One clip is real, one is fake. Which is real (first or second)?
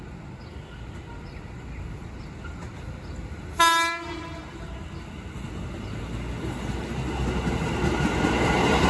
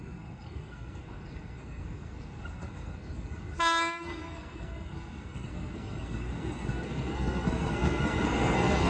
first